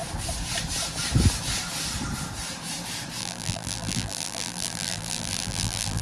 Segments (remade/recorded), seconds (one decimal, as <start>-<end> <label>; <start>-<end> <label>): 0.0-3.2 recorded; 3.2-6.0 remade